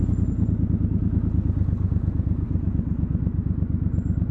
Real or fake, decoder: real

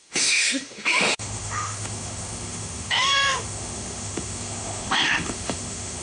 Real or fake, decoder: fake, autoencoder, DAC-VAE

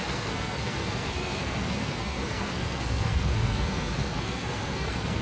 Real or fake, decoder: fake, codec, SNAC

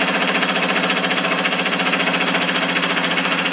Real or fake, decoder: real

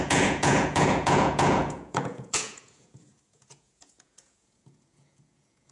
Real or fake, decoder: fake, vocoder, Vocos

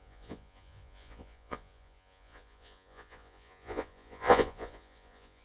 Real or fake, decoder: fake, vocoder, Vocos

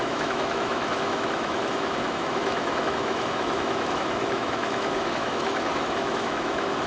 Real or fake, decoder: fake, autoencoder, DAC-VAE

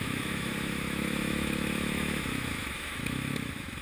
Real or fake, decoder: fake, autoencoder, DAC-VAE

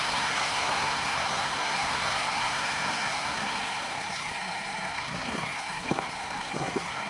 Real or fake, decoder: fake, codec, SNAC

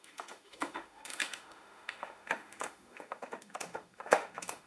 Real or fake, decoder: fake, autoencoder, DAC-VAE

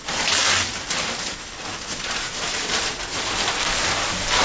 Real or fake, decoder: real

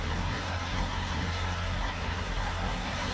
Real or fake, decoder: fake, codec, SNAC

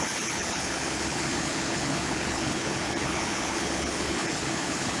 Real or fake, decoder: fake, codec, HILCodec